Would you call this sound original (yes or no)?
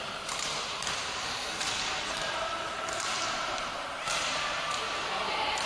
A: no